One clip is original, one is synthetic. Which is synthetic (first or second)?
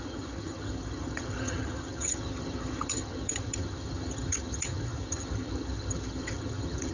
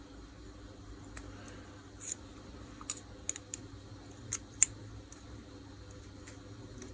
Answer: first